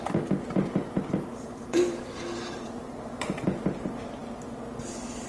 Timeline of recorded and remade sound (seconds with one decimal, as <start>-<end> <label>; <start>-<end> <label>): 0.0-0.8 recorded; 0.8-3.5 remade; 3.5-5.3 recorded